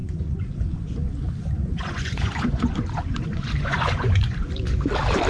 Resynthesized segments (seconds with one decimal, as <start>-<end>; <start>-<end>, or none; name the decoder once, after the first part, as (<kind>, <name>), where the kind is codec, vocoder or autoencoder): 0.0-0.9 (vocoder, Vocos); 1.4-4.6